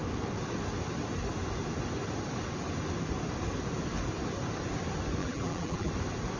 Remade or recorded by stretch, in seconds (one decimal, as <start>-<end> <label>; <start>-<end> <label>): 0.0-5.2 recorded; 5.2-5.9 remade; 5.9-6.4 recorded